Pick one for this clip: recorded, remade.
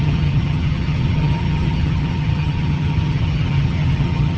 remade